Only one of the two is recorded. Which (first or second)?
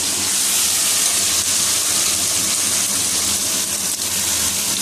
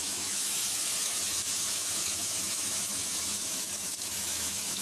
first